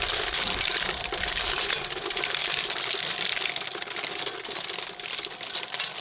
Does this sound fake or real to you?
real